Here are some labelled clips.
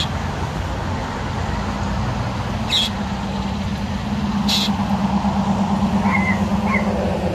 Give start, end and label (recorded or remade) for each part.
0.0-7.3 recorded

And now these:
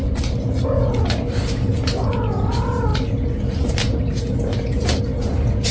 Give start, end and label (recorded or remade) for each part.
0.0-5.7 recorded

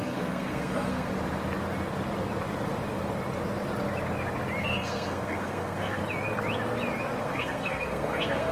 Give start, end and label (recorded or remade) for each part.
0.0-1.1 remade; 1.1-4.6 recorded; 4.6-6.0 remade; 6.0-7.2 recorded; 7.2-8.5 remade

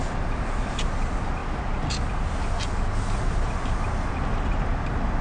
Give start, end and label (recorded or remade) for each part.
0.0-5.2 recorded

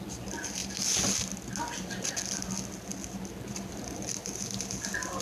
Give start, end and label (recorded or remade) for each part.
0.0-5.2 recorded

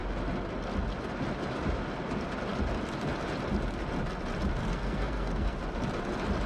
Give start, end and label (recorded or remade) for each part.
0.0-4.6 recorded; 4.6-5.6 remade; 5.6-6.5 recorded

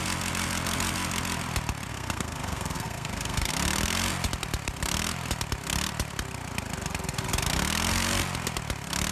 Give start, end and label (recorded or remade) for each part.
0.0-1.9 recorded; 1.9-3.5 remade; 3.5-9.1 recorded